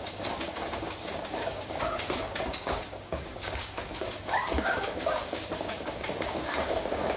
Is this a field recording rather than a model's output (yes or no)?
no